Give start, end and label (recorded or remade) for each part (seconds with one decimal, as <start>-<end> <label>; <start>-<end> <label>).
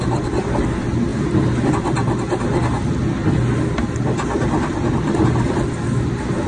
0.0-6.5 recorded